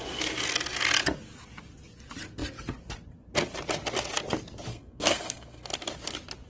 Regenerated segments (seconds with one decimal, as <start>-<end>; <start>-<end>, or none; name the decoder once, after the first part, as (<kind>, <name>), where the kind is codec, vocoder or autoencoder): 4.7-5.7 (codec, SNAC)